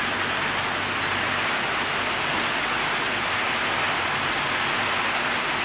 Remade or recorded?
recorded